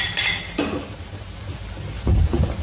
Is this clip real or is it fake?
real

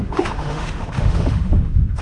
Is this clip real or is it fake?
fake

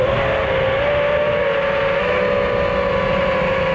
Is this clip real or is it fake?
real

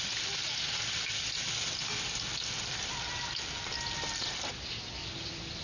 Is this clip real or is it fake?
real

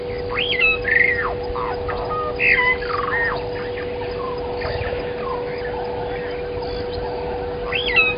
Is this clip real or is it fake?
real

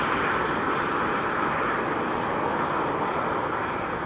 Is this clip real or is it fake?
real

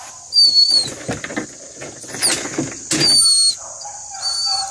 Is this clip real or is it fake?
real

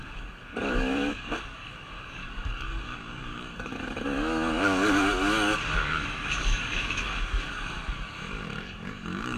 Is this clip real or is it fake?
fake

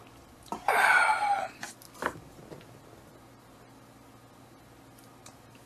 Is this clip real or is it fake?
real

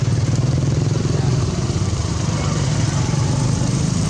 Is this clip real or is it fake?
fake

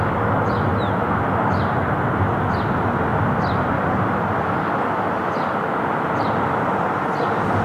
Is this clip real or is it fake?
real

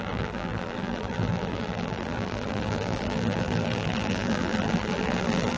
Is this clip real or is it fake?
fake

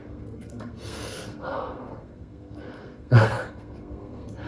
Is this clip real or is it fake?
fake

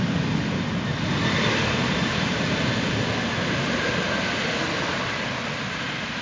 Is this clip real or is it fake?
real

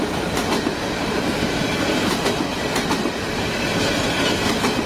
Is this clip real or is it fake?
real